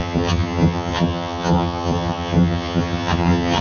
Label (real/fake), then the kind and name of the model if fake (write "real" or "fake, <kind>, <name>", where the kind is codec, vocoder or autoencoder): fake, vocoder, HiFi-GAN